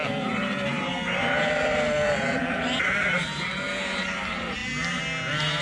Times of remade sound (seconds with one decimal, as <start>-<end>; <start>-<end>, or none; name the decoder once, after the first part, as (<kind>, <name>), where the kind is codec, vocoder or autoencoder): 0.0-4.6 (vocoder, BigVGAN v2)